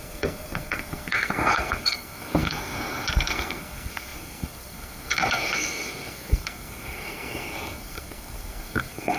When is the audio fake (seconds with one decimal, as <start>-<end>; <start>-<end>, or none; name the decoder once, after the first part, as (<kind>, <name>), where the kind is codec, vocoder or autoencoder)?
0.0-9.2 (codec, SNAC)